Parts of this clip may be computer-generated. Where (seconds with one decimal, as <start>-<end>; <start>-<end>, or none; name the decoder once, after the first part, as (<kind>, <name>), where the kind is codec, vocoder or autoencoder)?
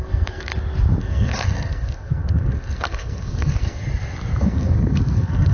0.0-0.5 (codec, SNAC); 1.0-3.8; 4.4-5.5